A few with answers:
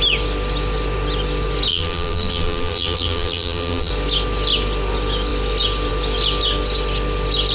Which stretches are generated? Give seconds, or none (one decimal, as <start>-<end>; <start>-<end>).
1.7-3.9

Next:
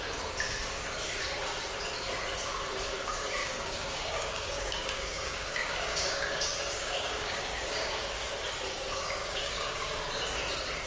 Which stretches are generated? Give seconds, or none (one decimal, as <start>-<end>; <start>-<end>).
3.4-8.3; 9.2-10.0

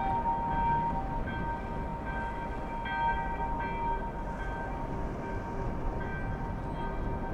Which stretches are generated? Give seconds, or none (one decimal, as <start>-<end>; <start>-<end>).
none

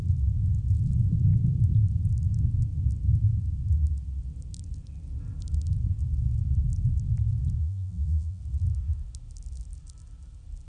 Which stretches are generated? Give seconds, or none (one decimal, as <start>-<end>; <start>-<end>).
7.6-8.4

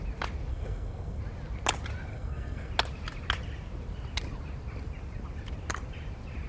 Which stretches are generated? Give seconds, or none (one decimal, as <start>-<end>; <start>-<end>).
0.5-1.2; 2.1-2.7

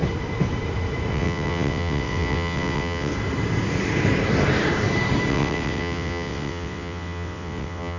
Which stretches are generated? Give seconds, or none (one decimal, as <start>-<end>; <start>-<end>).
1.1-3.1; 5.3-8.0

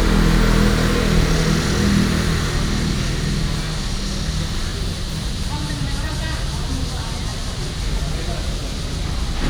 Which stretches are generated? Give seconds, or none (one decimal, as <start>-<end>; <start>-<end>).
4.7-6.1

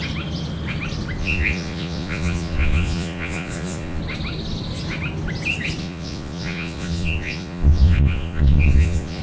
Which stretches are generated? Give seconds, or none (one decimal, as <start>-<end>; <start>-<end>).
1.2-4.0; 5.8-9.2